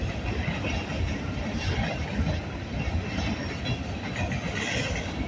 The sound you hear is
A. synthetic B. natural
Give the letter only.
B